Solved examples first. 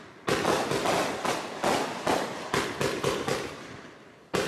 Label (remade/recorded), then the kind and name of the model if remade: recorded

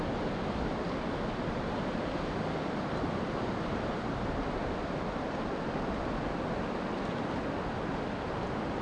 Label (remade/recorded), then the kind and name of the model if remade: recorded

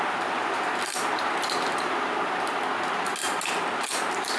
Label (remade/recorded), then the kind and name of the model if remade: recorded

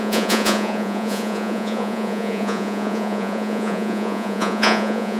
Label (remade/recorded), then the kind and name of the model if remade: remade, vocoder, Vocos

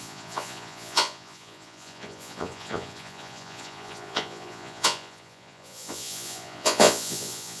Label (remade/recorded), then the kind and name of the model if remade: remade, vocoder, Vocos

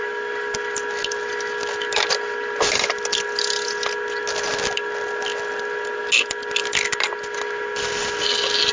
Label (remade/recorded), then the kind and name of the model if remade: recorded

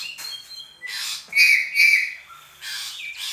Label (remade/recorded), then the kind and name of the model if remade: recorded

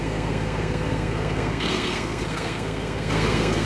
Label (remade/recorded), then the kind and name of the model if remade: remade, codec, SNAC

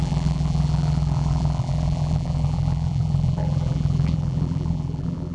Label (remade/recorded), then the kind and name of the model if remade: remade, vocoder, BigVGAN v2